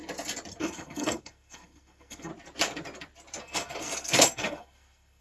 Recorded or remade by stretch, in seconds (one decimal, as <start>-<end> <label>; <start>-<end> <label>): 0.0-0.6 recorded; 0.6-2.3 remade; 2.3-3.4 recorded; 3.4-5.2 remade